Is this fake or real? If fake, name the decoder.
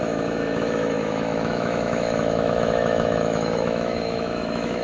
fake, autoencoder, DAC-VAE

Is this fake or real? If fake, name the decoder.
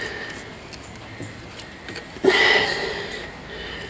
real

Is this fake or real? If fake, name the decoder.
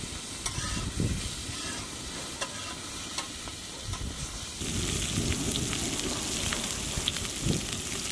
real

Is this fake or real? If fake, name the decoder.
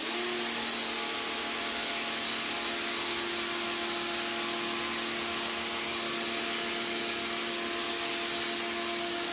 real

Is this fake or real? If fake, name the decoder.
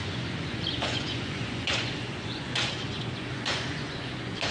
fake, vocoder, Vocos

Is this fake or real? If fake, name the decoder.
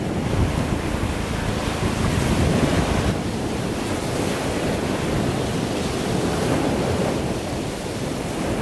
fake, vocoder, BigVGAN v2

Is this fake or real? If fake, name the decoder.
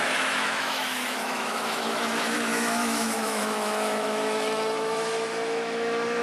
fake, autoencoder, DAC-VAE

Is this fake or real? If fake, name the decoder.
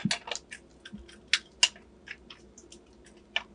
real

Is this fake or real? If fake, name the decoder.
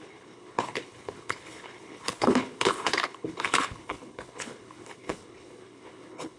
fake, codec, HILCodec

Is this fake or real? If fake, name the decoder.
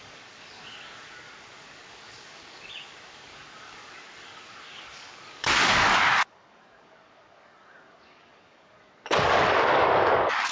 fake, codec, DAC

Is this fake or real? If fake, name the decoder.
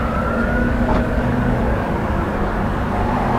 fake, codec, DAC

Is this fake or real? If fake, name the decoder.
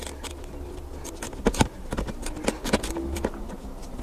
real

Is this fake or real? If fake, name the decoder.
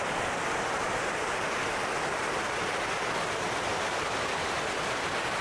real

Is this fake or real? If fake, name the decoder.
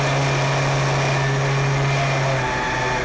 real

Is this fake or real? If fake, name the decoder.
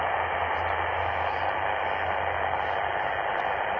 real